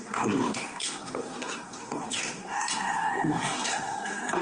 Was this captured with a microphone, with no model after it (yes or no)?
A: no